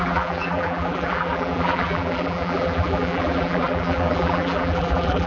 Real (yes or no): no